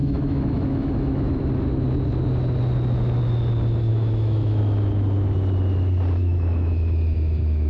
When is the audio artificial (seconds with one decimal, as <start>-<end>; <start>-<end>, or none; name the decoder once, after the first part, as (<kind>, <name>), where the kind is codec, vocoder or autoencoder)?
0.0-1.4 (autoencoder, DAC-VAE); 3.9-4.6; 6.2-7.7